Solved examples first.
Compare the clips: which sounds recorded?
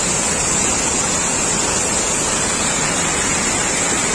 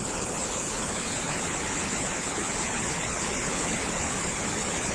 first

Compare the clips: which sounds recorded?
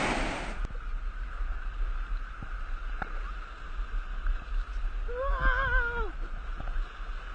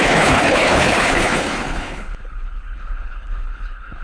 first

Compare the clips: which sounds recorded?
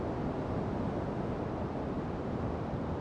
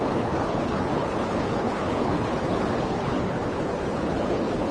first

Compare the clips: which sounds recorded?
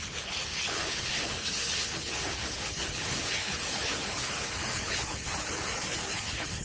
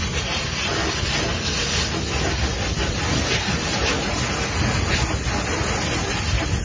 second